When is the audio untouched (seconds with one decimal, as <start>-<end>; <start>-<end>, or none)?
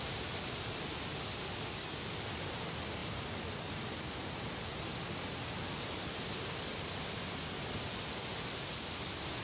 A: 0.0-9.4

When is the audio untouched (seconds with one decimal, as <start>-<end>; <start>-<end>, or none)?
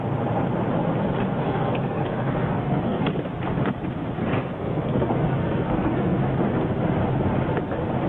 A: 0.0-1.4; 3.0-4.2; 6.2-8.1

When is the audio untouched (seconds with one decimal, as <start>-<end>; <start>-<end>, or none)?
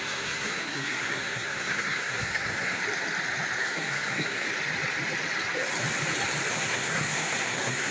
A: 2.8-3.6; 4.5-6.5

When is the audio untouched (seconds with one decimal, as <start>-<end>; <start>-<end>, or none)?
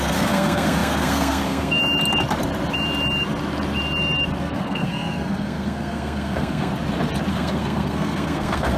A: 1.8-4.4; 6.7-7.3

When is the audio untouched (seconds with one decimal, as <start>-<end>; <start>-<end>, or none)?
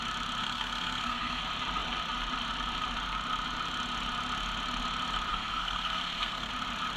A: 0.0-0.4; 1.4-5.3; 6.5-7.0